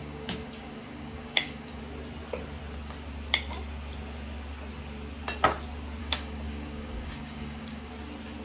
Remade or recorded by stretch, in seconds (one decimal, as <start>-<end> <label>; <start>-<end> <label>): 0.0-1.8 remade; 1.8-6.0 recorded; 6.0-7.9 remade; 7.9-8.4 recorded